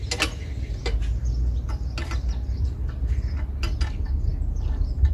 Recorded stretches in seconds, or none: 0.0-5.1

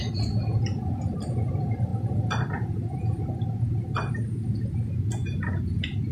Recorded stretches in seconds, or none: 0.0-6.1

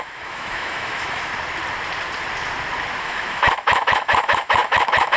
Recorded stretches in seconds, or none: 1.3-3.0

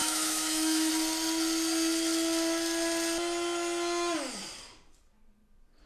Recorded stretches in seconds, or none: 0.9-5.9

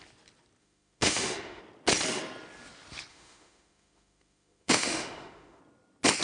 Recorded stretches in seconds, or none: 0.0-0.6; 1.6-3.1; 5.6-6.2

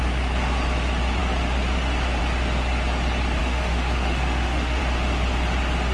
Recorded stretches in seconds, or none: 0.0-3.4; 4.8-5.9